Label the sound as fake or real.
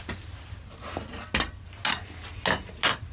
real